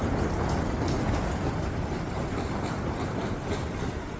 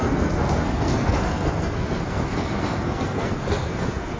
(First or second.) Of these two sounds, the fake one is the second